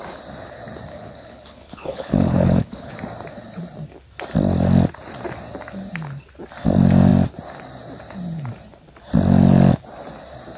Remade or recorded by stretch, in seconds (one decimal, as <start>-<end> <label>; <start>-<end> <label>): 0.0-0.9 recorded; 0.9-3.0 remade; 3.0-10.6 recorded